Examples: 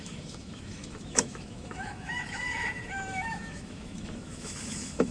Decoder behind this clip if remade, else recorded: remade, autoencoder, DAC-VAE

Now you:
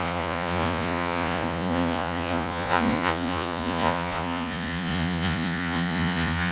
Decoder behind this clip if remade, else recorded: remade, vocoder, Vocos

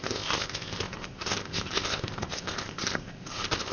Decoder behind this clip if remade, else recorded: remade, codec, ZipCodec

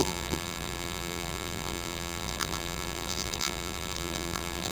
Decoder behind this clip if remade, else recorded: remade, vocoder, BigVGAN v2